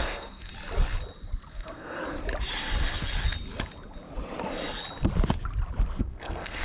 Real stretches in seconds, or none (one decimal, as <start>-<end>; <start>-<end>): 0.5-1.5; 2.0-6.0